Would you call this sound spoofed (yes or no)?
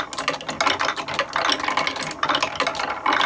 no